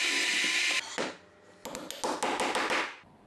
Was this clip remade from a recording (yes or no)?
no